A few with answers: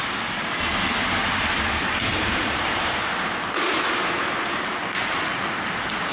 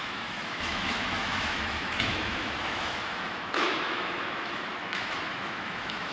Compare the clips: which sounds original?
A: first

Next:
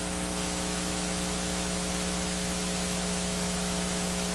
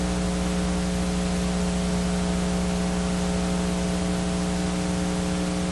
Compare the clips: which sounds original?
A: second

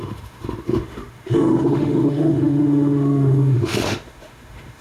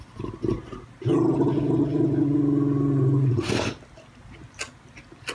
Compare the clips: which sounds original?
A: second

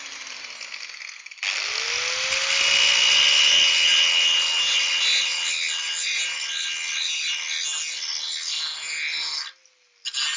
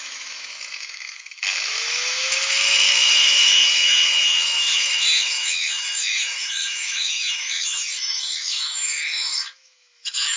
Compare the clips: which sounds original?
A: first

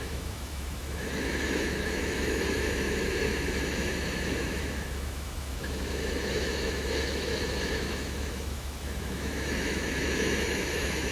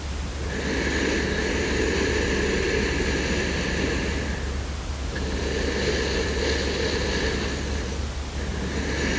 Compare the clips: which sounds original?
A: second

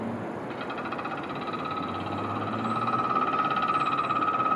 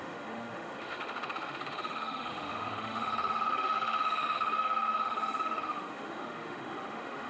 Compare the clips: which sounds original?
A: first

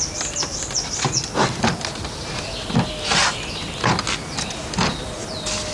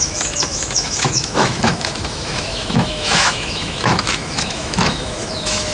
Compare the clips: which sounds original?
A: first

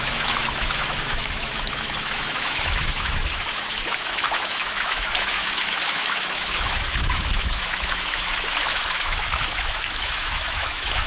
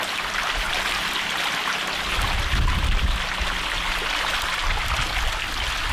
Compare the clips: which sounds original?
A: second